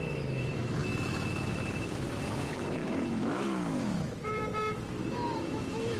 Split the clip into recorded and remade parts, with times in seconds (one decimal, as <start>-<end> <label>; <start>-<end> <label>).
0.0-6.0 remade